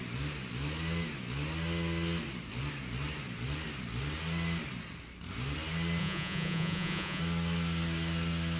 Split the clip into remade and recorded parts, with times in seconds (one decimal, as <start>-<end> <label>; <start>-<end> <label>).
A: 0.0-6.0 recorded; 6.0-7.2 remade; 7.2-8.6 recorded